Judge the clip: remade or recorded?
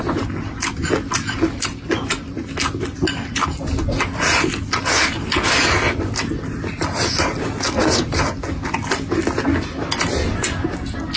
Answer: recorded